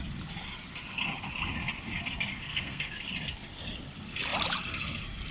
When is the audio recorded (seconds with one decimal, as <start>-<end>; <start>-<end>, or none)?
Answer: 0.0-2.3; 2.9-5.3